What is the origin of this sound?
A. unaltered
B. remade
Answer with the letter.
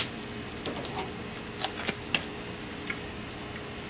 A